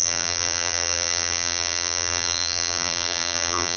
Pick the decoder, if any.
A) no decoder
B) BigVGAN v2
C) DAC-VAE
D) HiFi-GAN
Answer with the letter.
B